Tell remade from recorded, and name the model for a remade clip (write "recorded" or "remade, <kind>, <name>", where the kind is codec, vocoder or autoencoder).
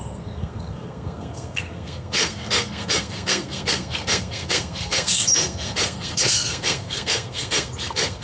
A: remade, codec, SNAC